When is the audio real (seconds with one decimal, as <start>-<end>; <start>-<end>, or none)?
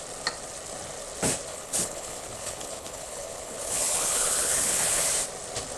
0.0-1.5; 5.0-5.8